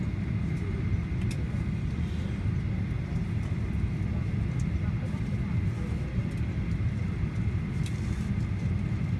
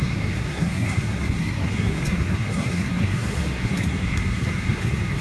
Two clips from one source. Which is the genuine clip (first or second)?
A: first